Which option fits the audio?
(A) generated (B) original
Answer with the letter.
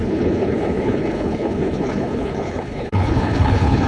A